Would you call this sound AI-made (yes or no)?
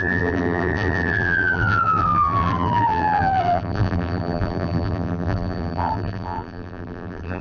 yes